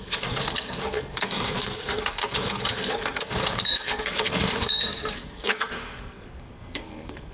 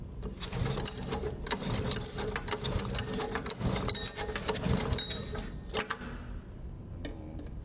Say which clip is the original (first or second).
second